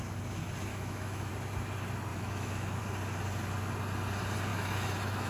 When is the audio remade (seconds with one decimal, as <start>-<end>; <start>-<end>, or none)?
0.7-1.3; 2.1-2.8; 4.5-5.3